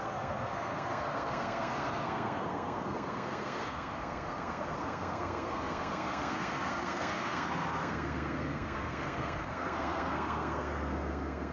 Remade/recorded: remade